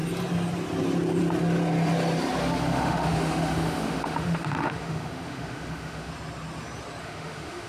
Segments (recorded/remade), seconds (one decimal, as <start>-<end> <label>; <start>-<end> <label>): 0.0-2.4 recorded; 2.4-6.1 remade; 6.1-7.0 recorded; 7.0-7.7 remade